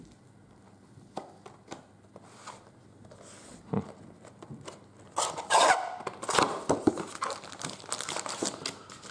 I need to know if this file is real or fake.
real